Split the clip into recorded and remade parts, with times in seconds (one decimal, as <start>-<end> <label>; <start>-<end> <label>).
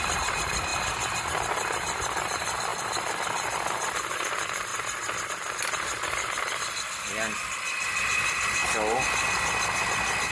0.0-10.3 recorded